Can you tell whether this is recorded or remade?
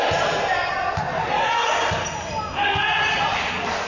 recorded